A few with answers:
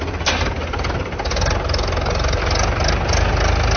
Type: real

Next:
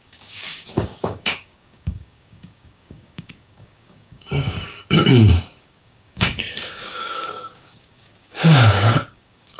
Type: fake